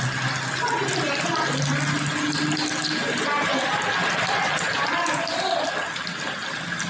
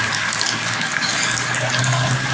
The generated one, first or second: second